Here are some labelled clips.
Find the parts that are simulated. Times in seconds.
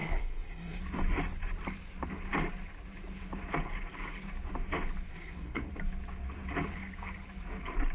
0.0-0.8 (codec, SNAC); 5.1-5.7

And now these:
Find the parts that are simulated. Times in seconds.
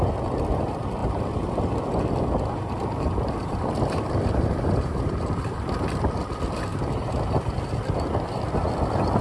1.0-5.8 (vocoder, BigVGAN v2); 6.7-7.6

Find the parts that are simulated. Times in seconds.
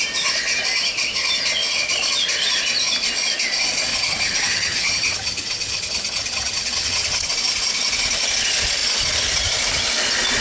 3.9-7.3 (vocoder, HiFi-GAN)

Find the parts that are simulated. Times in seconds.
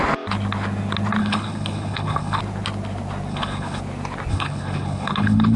1.2-2.4 (codec, HILCodec); 3.3-3.8; 4.3-5.6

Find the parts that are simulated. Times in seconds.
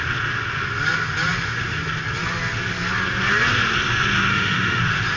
4.3-4.8 (autoencoder, DAC-VAE)